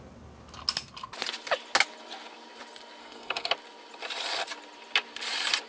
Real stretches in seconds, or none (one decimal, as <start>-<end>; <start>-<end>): 0.0-3.0; 3.5-5.7